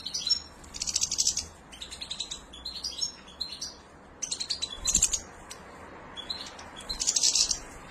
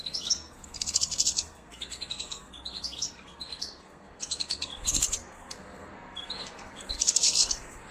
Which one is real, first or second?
first